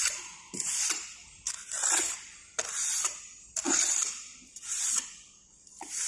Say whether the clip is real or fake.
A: fake